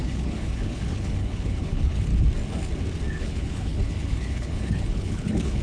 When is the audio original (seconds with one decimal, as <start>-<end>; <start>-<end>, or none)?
2.1-3.1